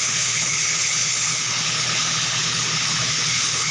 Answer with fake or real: fake